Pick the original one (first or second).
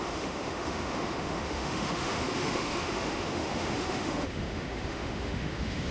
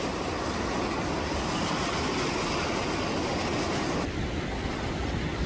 second